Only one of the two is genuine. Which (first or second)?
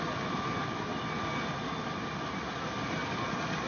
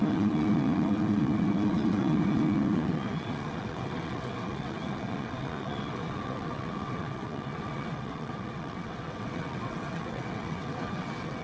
first